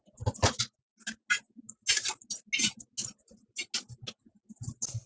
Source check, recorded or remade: recorded